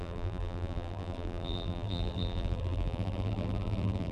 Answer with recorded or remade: remade